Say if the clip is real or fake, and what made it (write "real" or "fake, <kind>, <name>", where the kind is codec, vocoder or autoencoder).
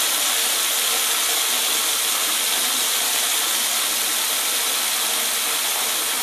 real